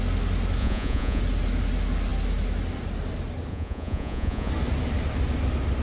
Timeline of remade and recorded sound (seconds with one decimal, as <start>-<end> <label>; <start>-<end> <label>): 0.0-0.6 recorded; 0.6-1.2 remade; 1.2-3.5 recorded; 3.5-4.5 remade; 4.5-5.8 recorded